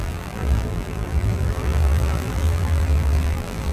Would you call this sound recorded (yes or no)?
no